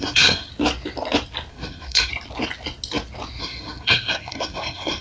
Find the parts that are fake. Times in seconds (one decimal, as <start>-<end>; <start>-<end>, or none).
0.0-0.5; 1.5-2.1; 3.4-5.0